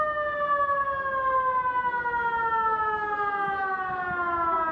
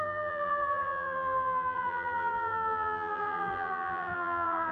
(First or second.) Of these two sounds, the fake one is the second